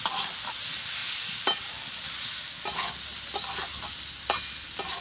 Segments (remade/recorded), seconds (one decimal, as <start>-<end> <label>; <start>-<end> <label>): 0.0-5.0 recorded